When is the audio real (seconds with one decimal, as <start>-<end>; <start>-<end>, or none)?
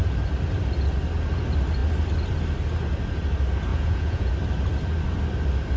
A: 0.0-3.7; 4.3-5.8